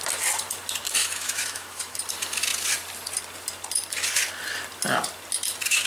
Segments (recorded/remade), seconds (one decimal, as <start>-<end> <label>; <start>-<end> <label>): 0.0-1.0 recorded; 1.0-2.0 remade; 2.0-5.9 recorded